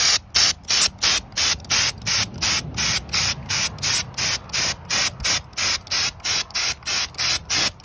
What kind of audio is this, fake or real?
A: real